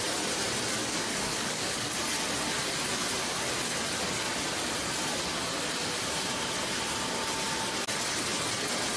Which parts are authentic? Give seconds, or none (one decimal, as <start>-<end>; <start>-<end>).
0.0-0.8; 1.9-9.0